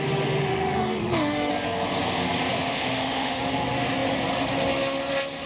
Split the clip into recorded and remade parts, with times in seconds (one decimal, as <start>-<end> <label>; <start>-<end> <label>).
0.0-0.4 recorded; 0.4-1.5 remade; 1.5-2.6 recorded; 2.6-3.4 remade; 3.4-5.5 recorded